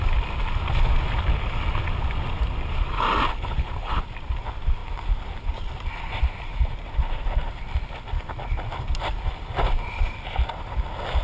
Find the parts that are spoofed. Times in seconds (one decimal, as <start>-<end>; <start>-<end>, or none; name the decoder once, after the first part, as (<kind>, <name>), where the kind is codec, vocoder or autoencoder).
3.3-4.0 (codec, HILCodec)